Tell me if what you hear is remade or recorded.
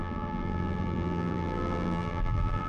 remade